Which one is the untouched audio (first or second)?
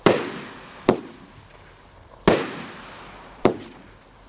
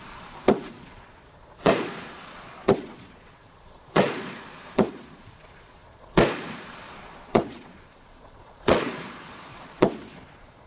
first